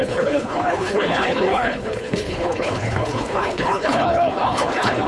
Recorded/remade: remade